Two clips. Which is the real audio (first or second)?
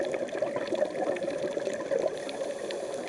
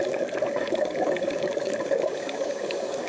first